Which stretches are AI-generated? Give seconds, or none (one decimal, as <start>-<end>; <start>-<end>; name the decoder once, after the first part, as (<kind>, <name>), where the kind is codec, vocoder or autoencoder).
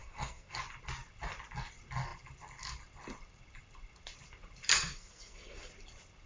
0.0-0.6 (codec, SNAC); 4.7-5.7